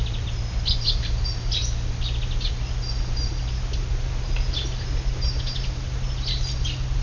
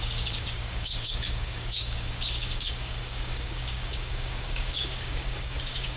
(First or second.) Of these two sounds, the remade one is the second